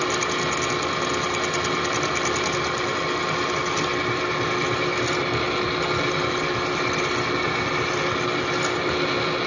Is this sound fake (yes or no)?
no